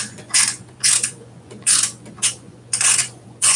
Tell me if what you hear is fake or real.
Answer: fake